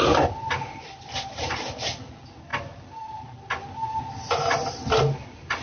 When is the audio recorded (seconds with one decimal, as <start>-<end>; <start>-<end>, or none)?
0.0-5.6